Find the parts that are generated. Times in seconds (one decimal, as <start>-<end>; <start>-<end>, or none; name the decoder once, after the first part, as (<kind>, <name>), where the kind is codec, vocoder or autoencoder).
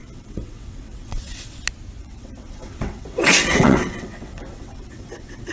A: 0.0-1.6 (vocoder, WaveNeXt); 2.0-5.5